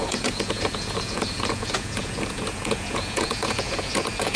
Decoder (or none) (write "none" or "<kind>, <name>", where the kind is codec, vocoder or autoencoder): vocoder, Vocos